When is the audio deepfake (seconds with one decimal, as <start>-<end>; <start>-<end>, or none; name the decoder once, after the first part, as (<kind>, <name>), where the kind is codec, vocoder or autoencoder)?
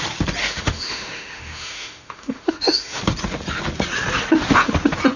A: 0.4-3.0 (autoencoder, DAC-VAE)